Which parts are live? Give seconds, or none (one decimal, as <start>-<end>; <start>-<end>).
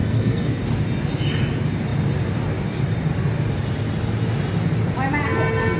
0.6-5.8